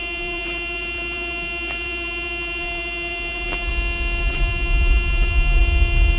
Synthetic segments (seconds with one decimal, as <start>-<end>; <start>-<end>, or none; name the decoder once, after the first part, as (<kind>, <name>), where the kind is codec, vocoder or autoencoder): 0.0-3.7 (vocoder, BigVGAN v2); 4.2-5.6